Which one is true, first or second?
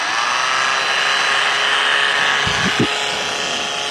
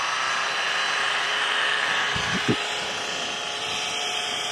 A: first